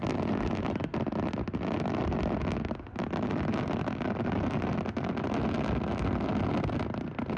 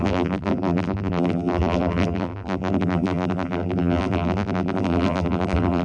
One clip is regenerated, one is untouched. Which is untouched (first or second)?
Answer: first